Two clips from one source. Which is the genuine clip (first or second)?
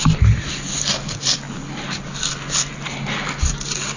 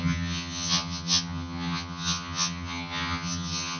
first